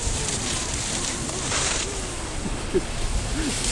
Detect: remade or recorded recorded